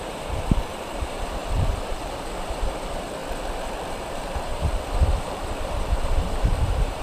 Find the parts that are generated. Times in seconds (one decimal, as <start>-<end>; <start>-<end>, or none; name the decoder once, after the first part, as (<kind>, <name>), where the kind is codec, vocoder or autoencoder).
0.0-3.2 (vocoder, BigVGAN v2); 3.9-7.0